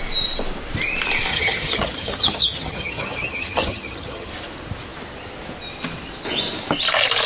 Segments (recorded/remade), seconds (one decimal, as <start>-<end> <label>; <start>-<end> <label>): 0.0-1.3 recorded; 1.3-4.3 remade; 4.3-7.3 recorded